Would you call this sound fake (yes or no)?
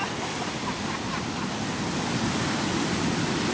no